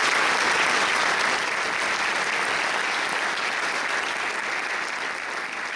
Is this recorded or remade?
recorded